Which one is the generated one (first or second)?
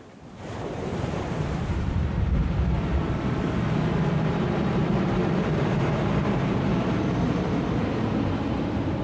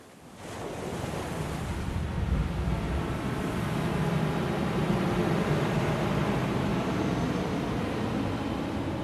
first